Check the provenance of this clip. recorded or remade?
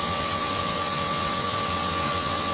remade